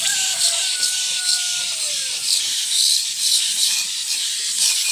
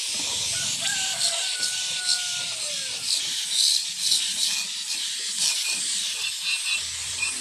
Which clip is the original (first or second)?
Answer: second